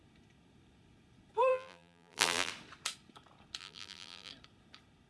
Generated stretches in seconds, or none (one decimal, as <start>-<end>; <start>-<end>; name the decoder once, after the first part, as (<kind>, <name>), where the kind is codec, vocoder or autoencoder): 1.5-2.5 (vocoder, BigVGAN v2); 3.6-4.3